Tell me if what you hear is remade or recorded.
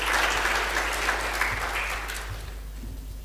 recorded